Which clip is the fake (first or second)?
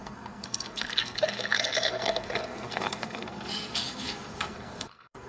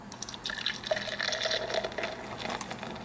first